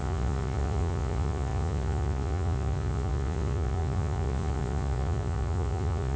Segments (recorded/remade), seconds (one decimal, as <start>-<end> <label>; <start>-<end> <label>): 0.0-6.2 remade